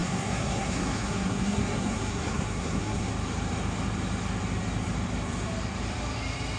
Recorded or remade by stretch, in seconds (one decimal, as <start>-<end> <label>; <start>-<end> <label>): 0.0-3.1 remade; 3.1-6.6 recorded